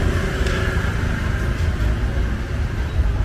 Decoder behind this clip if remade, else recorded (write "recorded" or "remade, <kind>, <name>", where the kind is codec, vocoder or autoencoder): recorded